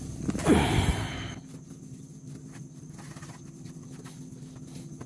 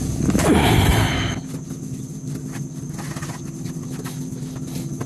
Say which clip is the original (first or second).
second